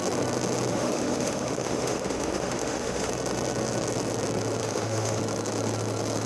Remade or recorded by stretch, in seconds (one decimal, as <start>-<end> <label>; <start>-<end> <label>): 0.0-0.7 recorded; 0.7-3.1 remade; 3.1-4.6 recorded; 4.6-5.2 remade; 5.2-6.3 recorded